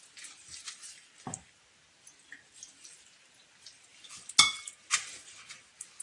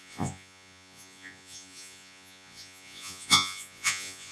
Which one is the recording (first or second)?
first